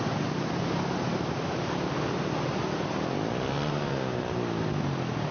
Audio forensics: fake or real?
real